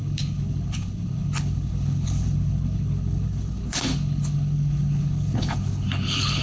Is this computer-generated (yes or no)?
yes